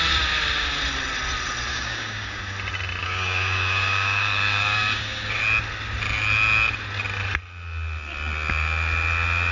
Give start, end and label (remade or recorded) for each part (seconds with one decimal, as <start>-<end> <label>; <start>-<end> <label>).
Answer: 0.0-1.7 recorded; 1.7-2.4 remade; 2.4-3.0 recorded; 3.0-5.4 remade; 5.4-9.5 recorded